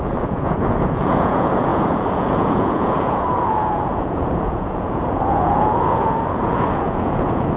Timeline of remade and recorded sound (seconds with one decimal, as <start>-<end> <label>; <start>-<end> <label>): 0.0-7.6 remade